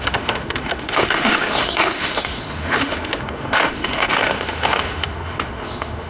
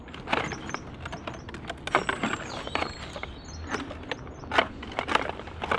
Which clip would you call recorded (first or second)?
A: second